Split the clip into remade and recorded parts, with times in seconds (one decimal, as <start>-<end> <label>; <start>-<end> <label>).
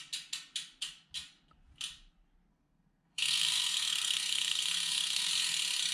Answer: 0.0-2.5 recorded; 2.5-5.3 remade; 5.3-5.9 recorded